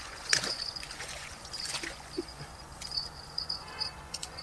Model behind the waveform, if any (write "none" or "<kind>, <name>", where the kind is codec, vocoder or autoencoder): vocoder, Vocos